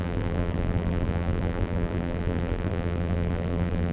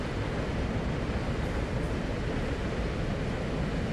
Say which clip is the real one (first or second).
second